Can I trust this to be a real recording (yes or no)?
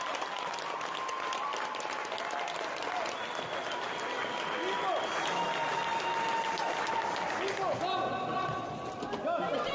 yes